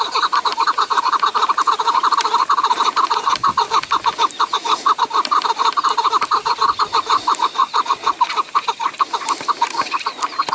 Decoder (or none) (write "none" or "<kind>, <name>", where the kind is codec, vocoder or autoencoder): none